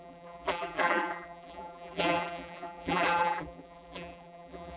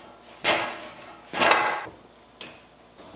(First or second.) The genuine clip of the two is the second